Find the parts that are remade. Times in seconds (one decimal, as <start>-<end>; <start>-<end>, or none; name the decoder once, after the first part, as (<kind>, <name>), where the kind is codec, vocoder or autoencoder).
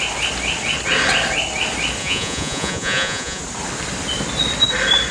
2.0-3.4 (vocoder, Vocos)